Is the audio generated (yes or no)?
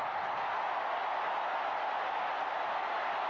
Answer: no